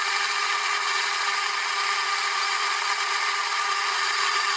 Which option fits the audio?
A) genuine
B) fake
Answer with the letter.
B